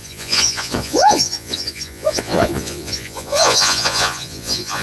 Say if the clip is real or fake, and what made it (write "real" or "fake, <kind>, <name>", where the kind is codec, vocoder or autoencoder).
fake, vocoder, Vocos